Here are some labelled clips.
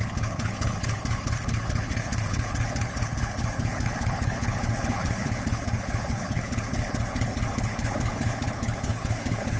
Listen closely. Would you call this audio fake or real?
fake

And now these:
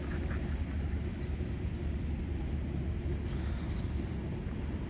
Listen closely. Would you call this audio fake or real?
real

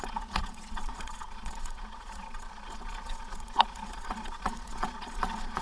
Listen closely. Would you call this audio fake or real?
fake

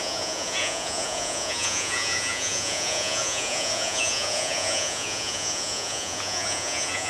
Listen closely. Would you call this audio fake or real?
fake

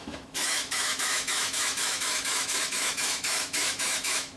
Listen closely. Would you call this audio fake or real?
fake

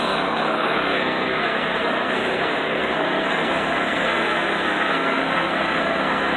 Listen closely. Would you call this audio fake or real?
fake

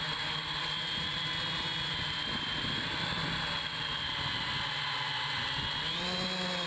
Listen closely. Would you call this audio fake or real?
real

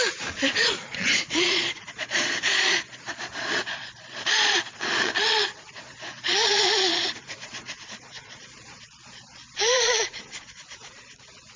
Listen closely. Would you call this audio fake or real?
fake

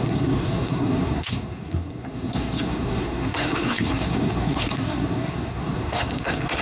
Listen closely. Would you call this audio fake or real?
fake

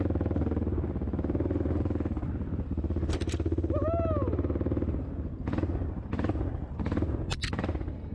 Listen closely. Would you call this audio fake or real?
real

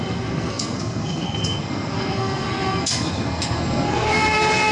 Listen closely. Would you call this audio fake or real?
fake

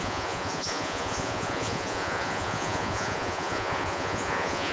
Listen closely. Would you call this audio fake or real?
fake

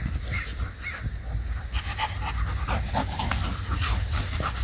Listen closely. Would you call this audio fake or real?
real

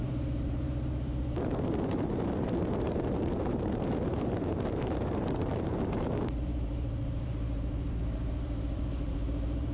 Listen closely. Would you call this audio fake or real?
fake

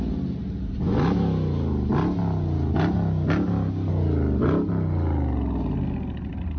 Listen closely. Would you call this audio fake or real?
real